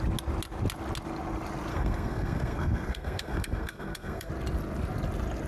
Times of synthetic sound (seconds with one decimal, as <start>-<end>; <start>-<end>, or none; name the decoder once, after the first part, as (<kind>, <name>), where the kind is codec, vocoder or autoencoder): 1.7-4.3 (codec, SNAC)